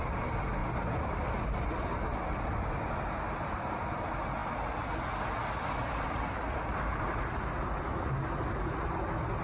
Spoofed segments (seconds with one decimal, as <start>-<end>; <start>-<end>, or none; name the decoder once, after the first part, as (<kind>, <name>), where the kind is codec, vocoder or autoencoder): none